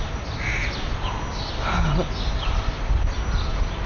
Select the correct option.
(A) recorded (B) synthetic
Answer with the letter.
A